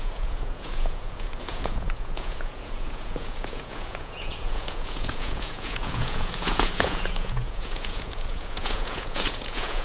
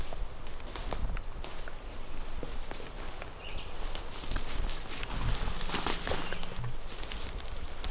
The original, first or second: second